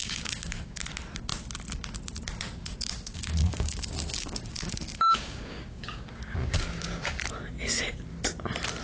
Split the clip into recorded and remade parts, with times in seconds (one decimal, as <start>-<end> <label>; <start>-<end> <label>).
0.0-0.8 remade; 0.8-2.6 recorded; 2.6-7.2 remade; 7.2-8.8 recorded